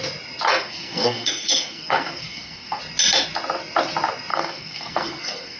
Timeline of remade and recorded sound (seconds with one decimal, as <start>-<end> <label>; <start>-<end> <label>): 0.0-0.5 recorded; 0.5-2.8 remade; 2.8-4.3 recorded; 4.3-5.6 remade

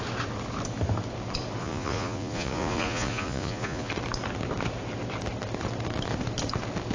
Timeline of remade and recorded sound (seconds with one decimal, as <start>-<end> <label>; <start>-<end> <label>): 0.0-1.6 recorded; 1.6-3.9 remade; 3.9-6.9 recorded

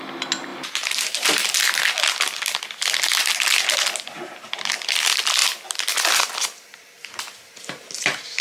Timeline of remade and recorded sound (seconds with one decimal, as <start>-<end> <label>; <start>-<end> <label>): 0.0-0.5 recorded; 0.5-1.8 remade; 1.8-8.4 recorded

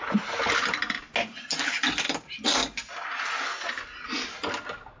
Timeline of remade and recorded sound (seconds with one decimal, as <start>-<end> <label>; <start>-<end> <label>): 0.0-5.0 recorded

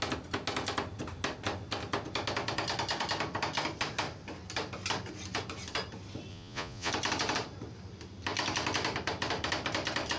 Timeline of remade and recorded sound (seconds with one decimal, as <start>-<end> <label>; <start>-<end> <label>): 0.0-6.3 recorded; 6.3-6.9 remade; 6.9-10.2 recorded

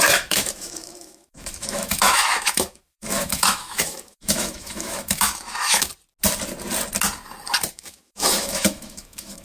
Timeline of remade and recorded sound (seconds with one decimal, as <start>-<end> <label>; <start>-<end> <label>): 0.0-5.9 remade; 5.9-7.7 recorded; 7.7-9.4 remade